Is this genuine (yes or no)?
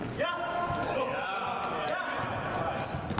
yes